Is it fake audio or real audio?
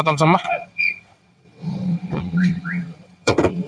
fake